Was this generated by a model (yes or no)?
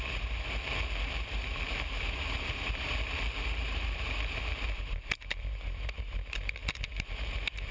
yes